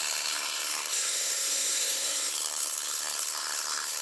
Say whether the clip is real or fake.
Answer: fake